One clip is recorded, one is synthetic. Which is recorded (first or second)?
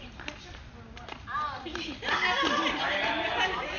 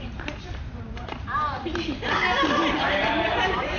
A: first